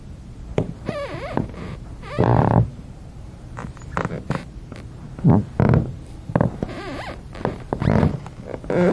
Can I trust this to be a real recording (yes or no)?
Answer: no